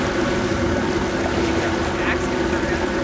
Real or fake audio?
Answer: real